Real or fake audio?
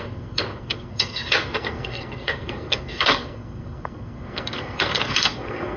fake